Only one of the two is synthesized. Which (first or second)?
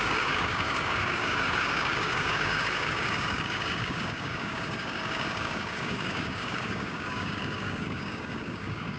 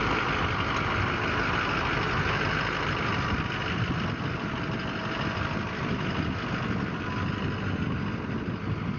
first